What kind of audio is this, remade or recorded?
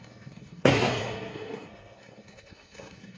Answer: remade